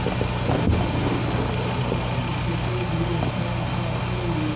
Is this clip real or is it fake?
real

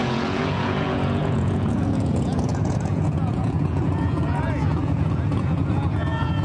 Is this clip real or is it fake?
fake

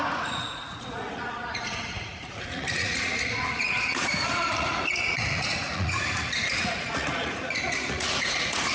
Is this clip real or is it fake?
fake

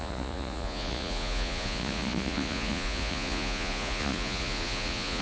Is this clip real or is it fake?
fake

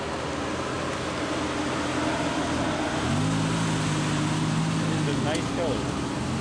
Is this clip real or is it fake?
real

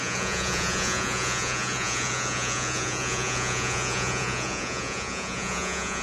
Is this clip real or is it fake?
fake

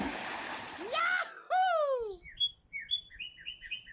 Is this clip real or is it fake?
real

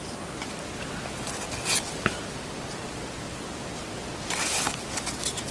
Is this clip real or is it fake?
real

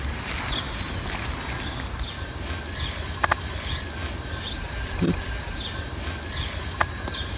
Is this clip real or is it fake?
real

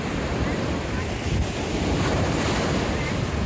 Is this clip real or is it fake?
real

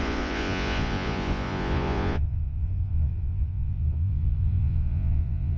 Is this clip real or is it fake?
fake